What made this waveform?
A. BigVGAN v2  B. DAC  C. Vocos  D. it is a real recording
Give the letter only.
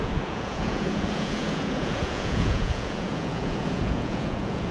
C